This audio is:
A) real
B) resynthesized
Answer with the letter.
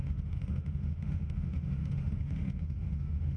B